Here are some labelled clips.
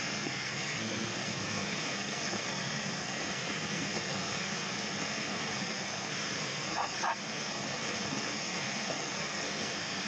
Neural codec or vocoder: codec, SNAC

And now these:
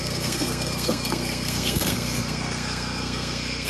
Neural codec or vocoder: codec, SNAC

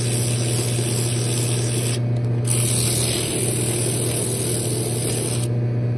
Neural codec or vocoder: none